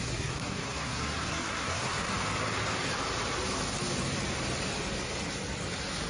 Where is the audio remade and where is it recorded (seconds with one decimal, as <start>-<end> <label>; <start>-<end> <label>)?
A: 0.0-2.1 remade; 2.1-6.1 recorded